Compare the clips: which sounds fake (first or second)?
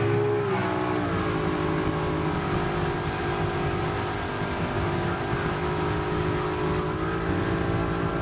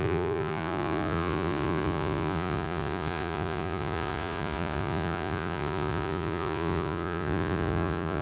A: second